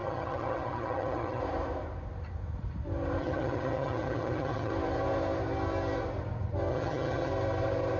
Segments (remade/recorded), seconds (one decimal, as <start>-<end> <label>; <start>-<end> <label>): 0.0-1.4 remade; 1.4-3.2 recorded; 3.2-4.7 remade; 4.7-6.7 recorded; 6.7-7.3 remade; 7.3-8.0 recorded